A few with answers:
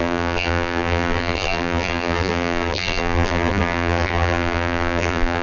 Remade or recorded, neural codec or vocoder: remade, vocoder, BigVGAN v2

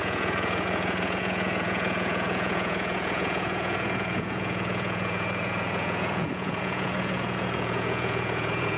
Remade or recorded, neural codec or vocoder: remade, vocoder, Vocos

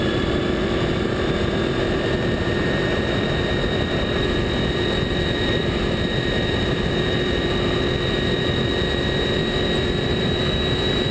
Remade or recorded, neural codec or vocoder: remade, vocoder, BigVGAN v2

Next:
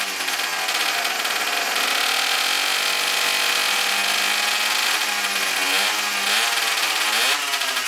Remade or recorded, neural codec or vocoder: recorded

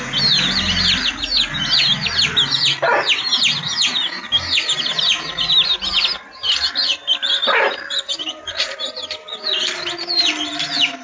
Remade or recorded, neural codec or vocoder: recorded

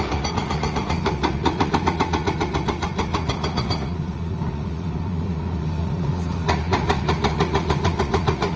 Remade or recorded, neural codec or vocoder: remade, vocoder, Vocos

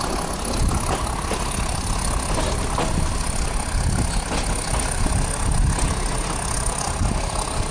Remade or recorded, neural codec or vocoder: recorded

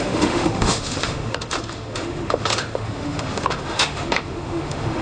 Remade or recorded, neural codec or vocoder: remade, autoencoder, DAC-VAE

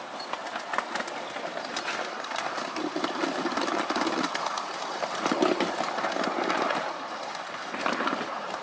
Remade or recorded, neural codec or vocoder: recorded